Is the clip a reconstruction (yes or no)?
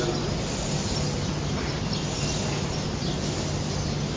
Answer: no